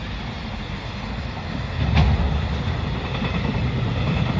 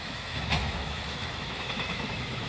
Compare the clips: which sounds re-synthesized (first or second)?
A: second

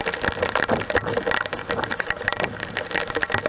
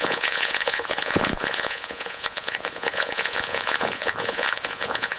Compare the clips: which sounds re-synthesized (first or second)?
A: second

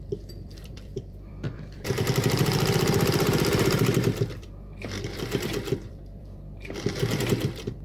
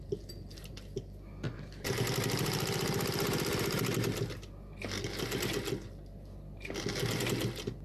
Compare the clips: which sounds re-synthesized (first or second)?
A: first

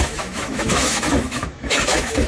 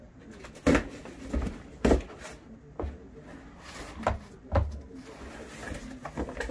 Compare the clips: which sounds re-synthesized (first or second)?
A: first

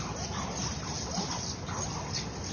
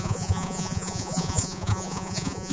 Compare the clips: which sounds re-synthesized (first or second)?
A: second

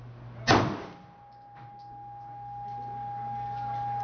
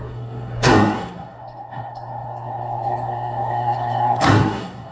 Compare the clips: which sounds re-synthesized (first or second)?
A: second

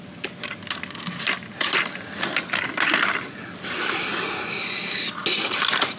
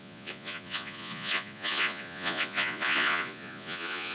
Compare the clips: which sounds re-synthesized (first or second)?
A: second